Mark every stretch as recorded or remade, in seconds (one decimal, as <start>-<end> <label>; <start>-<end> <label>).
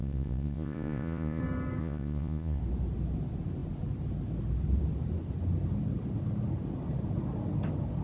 0.0-1.4 remade; 1.4-1.8 recorded; 1.8-2.6 remade; 2.6-8.0 recorded